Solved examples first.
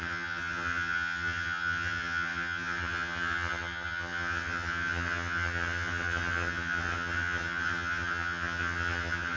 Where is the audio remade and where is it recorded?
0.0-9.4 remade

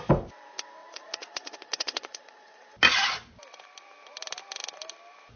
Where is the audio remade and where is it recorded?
0.0-0.8 recorded; 0.8-2.7 remade; 2.7-5.4 recorded

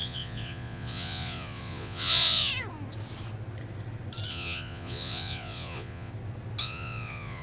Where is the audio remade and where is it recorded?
0.0-2.5 remade; 2.5-4.3 recorded; 4.3-6.1 remade; 6.1-6.6 recorded; 6.6-7.4 remade

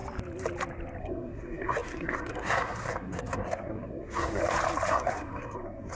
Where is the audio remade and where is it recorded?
0.0-1.0 recorded; 1.0-4.4 remade; 4.4-4.9 recorded; 4.9-5.9 remade

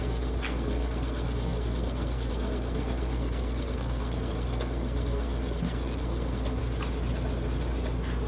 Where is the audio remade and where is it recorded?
0.0-6.6 remade; 6.6-8.3 recorded

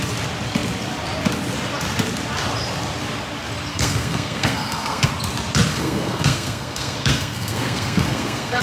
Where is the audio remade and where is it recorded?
0.0-3.7 recorded; 3.7-5.1 remade; 5.1-5.7 recorded; 5.7-8.6 remade